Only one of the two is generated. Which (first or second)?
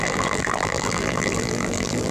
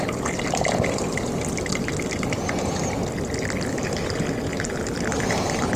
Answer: first